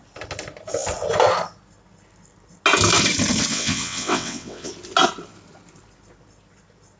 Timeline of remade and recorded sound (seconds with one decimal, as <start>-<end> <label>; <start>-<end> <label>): 0.0-3.5 recorded; 3.5-4.7 remade; 4.7-7.0 recorded

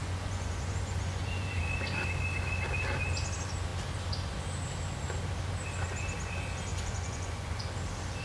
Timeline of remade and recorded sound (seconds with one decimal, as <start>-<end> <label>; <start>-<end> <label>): 0.0-1.6 remade; 1.6-6.7 recorded; 6.7-7.7 remade; 7.7-8.2 recorded

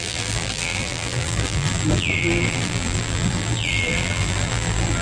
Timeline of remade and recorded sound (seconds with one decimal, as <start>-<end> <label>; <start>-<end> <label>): 0.0-5.0 remade

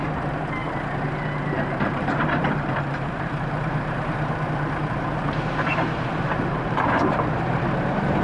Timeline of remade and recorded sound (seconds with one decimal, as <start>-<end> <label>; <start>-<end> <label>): 0.0-0.6 remade; 0.6-1.8 recorded; 1.8-8.2 remade